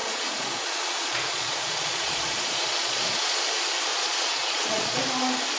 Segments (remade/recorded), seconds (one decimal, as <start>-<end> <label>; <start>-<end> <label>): 0.0-3.4 remade; 3.4-3.9 recorded; 3.9-5.0 remade; 5.0-5.6 recorded